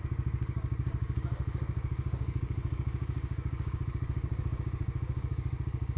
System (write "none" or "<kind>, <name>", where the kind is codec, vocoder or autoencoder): codec, DAC